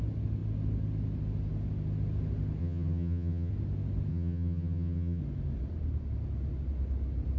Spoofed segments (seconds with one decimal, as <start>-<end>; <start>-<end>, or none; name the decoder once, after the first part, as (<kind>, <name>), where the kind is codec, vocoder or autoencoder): 2.6-3.5 (vocoder, HiFi-GAN); 4.1-5.2

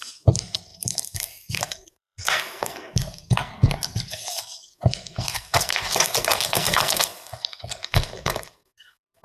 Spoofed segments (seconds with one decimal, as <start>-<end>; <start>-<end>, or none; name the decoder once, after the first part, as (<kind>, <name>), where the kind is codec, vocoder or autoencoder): 0.0-9.2 (codec, SNAC)

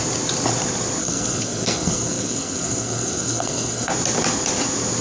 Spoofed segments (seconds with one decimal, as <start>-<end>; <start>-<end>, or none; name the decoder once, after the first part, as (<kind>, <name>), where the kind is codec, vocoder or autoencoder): 1.0-3.9 (codec, SNAC)

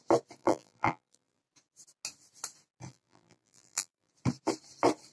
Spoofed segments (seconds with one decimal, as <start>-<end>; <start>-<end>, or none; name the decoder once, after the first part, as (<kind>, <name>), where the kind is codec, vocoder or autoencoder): 0.4-1.4 (vocoder, BigVGAN v2); 2.9-4.1